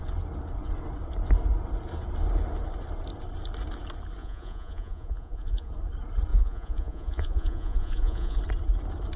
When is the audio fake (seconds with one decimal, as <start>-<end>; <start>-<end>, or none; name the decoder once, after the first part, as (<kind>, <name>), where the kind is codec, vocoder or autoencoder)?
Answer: 4.2-5.7 (vocoder, Vocos); 6.3-8.4